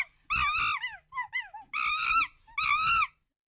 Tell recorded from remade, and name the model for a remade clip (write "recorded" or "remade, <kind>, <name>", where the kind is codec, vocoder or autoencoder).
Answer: recorded